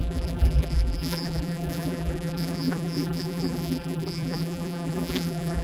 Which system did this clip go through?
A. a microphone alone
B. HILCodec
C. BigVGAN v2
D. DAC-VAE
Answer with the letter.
C